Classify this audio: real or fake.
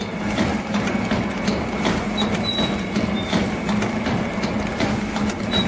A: real